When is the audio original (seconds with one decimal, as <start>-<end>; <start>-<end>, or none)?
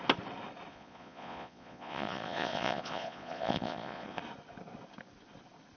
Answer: 0.0-0.7; 4.2-5.8